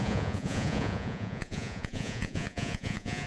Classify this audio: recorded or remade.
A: remade